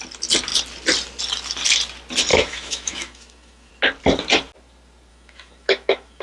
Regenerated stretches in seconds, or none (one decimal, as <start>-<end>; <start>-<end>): 2.3-3.7; 5.1-6.2